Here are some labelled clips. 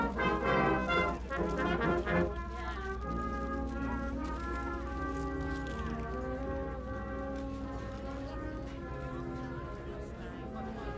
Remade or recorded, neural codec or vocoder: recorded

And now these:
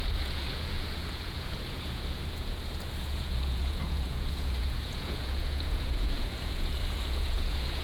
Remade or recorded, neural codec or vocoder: remade, vocoder, Vocos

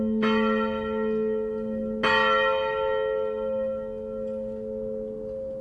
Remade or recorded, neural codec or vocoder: recorded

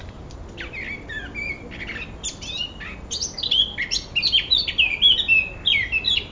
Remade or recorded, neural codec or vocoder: recorded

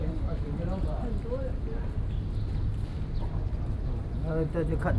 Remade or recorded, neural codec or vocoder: recorded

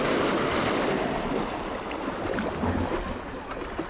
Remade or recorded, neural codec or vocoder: recorded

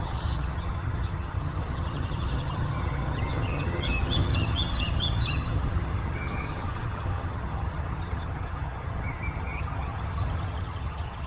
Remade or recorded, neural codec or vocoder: remade, vocoder, HiFi-GAN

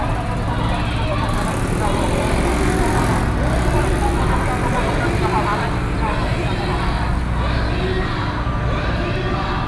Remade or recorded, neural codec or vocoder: recorded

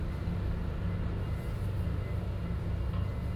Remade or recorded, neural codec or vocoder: recorded